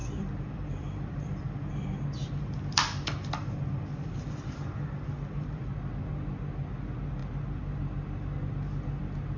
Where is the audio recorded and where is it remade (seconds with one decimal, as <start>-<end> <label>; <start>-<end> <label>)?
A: 0.0-1.7 remade; 1.7-2.2 recorded; 2.2-5.7 remade; 5.7-9.4 recorded